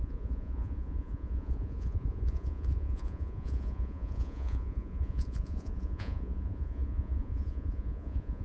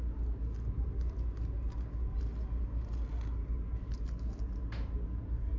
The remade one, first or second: first